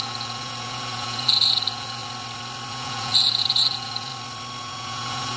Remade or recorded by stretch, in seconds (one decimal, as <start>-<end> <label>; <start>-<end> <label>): 0.0-2.0 remade; 2.0-2.7 recorded; 2.7-4.1 remade; 4.1-4.6 recorded; 4.6-5.4 remade